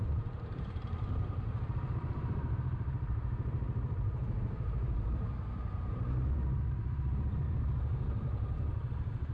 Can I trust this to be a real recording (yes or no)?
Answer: no